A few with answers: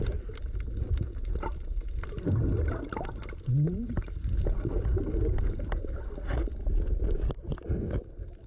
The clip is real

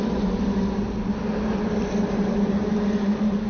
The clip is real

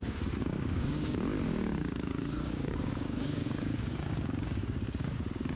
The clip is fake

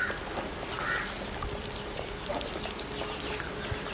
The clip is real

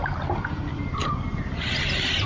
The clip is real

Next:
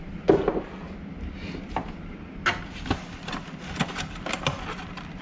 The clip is real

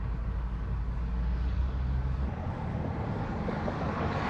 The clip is fake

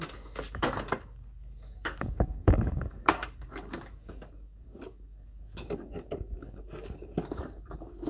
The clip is fake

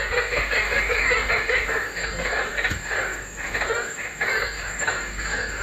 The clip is fake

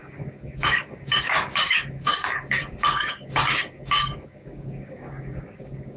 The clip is fake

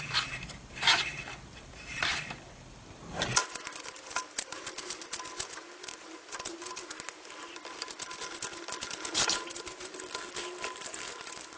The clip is real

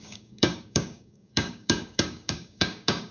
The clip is fake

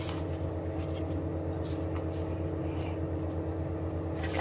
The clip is real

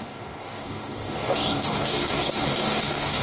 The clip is fake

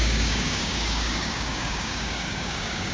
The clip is fake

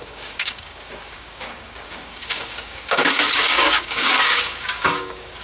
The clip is fake